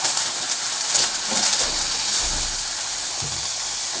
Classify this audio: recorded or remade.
recorded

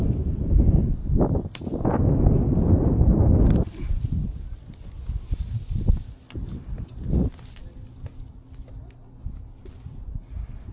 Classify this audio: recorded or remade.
recorded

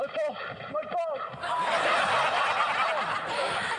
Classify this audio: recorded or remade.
recorded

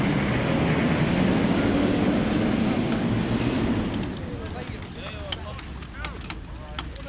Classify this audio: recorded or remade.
recorded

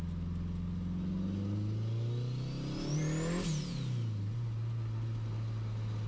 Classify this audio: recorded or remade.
recorded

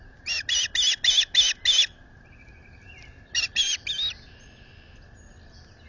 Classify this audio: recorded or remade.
recorded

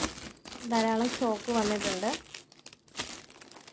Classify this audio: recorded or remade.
recorded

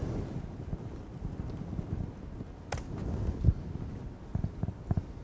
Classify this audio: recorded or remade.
recorded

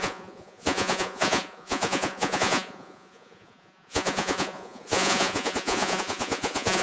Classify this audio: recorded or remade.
remade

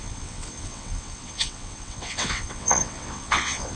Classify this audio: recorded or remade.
remade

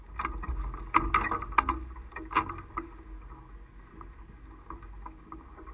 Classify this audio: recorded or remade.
recorded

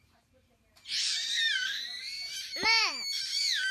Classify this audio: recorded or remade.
remade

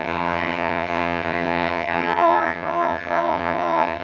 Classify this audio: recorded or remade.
remade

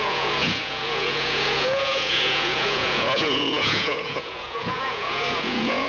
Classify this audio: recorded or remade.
remade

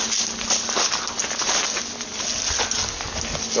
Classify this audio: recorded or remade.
recorded